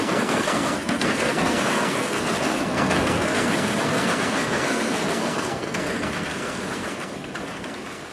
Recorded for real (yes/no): no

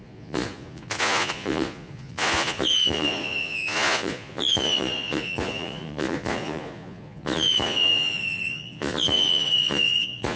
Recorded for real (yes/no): no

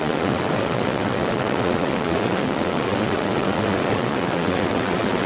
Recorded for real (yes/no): no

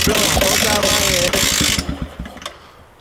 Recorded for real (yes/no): yes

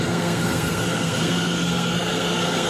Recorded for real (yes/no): no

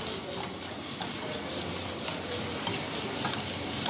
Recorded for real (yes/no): yes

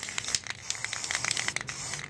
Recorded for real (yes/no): yes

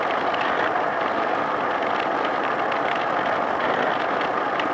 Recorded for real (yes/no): yes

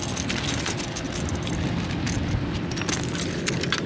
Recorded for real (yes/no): yes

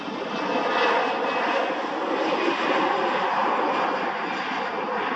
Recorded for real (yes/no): yes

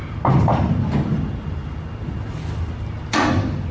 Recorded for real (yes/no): yes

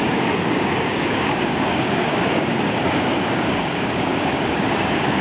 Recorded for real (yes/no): no